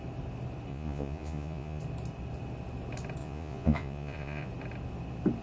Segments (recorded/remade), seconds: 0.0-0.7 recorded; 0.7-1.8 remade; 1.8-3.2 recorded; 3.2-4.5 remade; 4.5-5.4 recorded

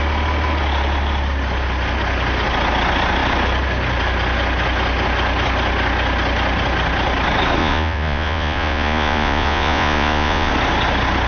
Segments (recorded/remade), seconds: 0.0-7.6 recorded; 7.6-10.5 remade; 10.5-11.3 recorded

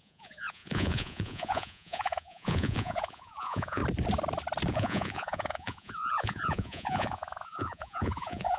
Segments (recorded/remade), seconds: 0.0-3.8 remade; 3.8-4.7 recorded; 4.7-8.6 remade